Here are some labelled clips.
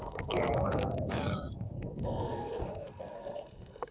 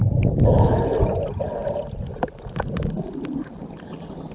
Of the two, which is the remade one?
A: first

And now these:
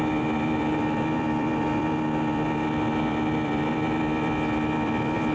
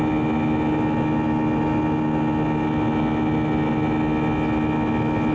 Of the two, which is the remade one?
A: first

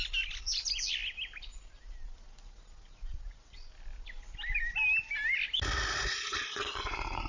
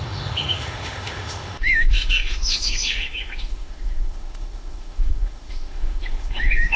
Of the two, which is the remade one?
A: second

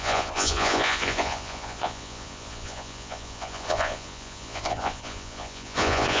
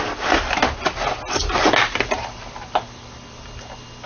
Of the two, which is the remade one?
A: first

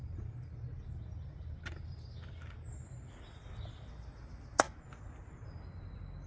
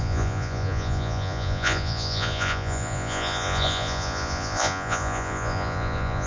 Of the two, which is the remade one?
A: second